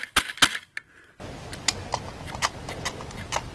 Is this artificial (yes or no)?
no